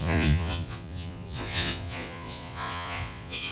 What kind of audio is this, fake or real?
fake